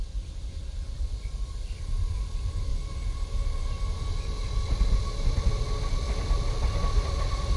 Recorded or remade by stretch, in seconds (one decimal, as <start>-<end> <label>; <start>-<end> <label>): 0.0-2.7 remade; 2.7-4.1 recorded; 4.1-7.6 remade